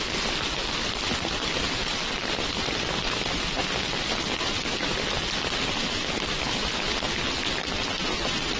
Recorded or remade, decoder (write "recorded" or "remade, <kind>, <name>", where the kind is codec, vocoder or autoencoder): recorded